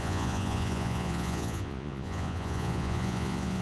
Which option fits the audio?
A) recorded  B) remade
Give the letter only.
B